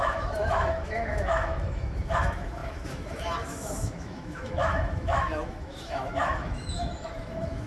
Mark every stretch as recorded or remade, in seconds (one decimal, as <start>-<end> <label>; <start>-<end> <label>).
0.0-7.7 remade